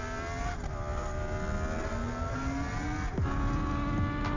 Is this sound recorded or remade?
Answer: recorded